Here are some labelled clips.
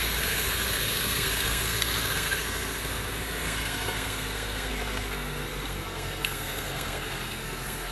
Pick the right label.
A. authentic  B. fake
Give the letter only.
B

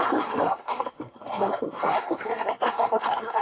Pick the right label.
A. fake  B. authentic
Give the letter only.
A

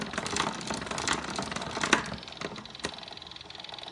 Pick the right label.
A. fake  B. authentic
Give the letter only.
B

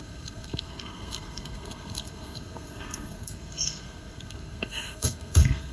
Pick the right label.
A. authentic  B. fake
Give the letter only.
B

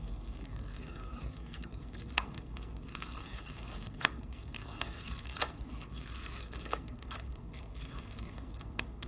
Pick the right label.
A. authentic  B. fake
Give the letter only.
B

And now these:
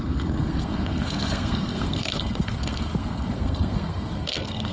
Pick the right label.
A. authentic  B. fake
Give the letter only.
B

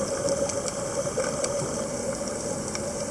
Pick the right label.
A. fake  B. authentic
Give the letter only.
B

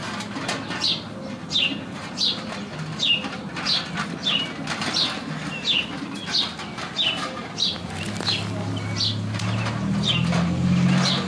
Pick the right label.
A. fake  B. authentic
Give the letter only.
B